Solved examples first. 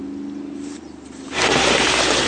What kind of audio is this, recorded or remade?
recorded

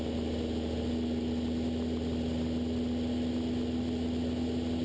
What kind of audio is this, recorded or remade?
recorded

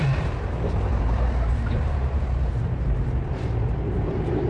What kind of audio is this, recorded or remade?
remade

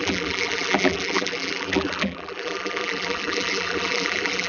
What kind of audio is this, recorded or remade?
remade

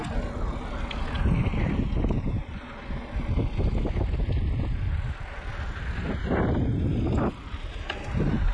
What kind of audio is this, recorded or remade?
recorded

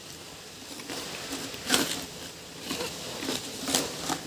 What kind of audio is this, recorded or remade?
remade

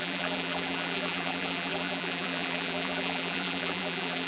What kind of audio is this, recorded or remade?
remade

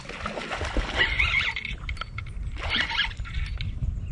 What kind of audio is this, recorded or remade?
recorded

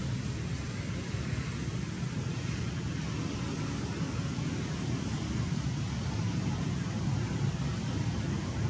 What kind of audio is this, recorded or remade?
remade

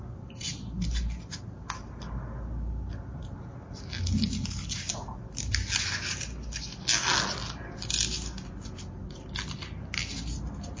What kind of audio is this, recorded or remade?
recorded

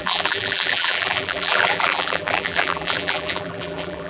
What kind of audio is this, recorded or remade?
remade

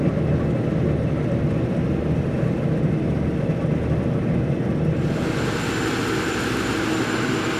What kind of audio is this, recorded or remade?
recorded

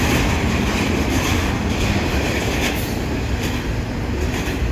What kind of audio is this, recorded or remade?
recorded